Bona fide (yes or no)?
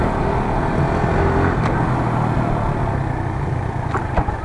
yes